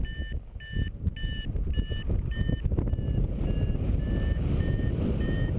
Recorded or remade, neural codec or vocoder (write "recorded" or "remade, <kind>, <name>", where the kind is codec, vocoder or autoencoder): recorded